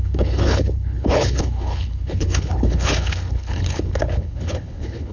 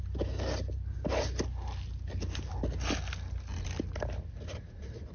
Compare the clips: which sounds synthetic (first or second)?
first